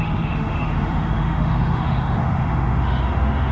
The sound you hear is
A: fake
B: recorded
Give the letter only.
A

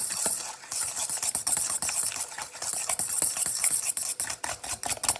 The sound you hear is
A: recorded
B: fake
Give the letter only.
A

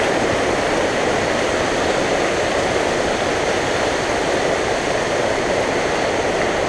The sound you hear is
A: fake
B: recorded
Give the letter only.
B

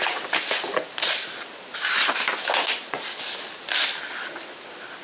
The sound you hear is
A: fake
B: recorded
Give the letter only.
B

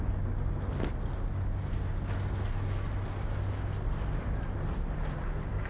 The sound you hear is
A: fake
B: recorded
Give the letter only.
B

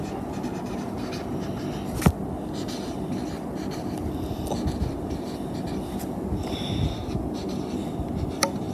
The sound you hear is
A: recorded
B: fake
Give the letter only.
A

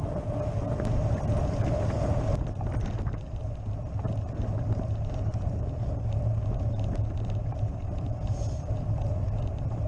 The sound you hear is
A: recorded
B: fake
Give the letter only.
A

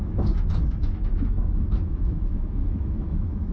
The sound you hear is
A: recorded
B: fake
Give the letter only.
B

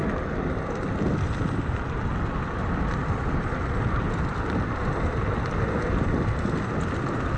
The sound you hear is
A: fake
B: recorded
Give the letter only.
B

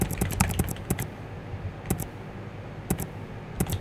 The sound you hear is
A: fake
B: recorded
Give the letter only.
B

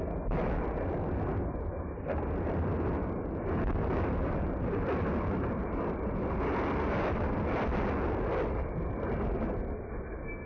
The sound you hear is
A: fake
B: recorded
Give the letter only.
B